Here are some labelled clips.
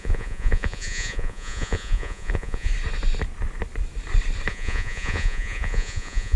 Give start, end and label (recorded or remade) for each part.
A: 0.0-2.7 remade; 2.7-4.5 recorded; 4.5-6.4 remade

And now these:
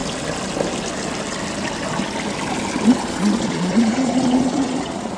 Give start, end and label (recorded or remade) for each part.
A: 0.0-3.1 recorded; 3.1-5.2 remade

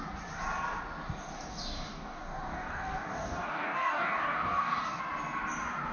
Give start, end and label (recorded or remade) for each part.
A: 0.0-1.5 recorded; 1.5-5.0 remade; 5.0-5.9 recorded